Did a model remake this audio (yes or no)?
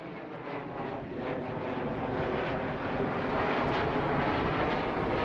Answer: no